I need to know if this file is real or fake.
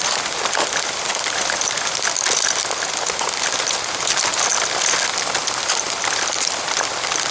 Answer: real